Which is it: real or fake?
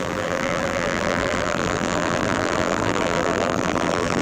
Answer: fake